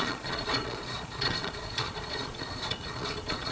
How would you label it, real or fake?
fake